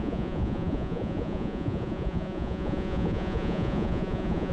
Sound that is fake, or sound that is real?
fake